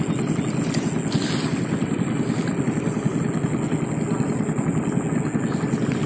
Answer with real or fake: real